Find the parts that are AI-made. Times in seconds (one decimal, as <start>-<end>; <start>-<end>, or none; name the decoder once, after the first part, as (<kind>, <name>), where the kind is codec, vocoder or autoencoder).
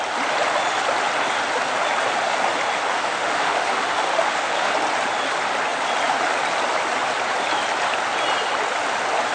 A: 2.9-4.7 (autoencoder, DAC-VAE)